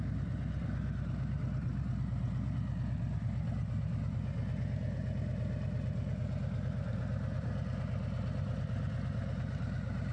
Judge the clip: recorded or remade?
recorded